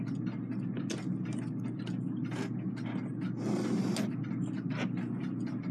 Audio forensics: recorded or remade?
recorded